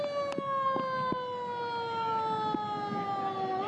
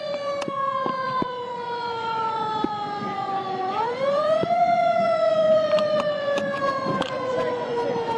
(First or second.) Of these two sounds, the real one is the first